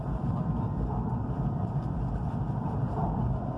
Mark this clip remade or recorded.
remade